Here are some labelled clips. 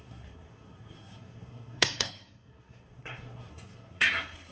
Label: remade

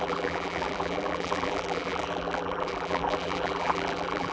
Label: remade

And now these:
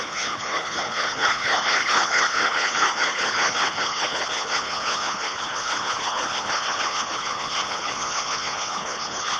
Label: remade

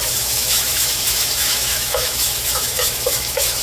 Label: remade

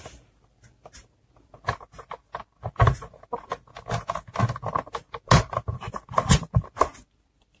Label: recorded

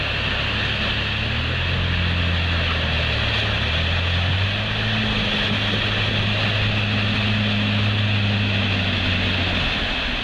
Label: recorded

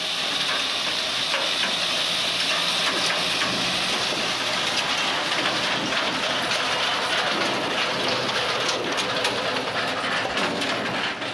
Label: recorded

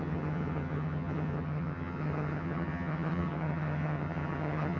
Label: remade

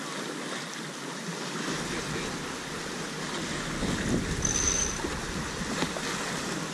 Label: recorded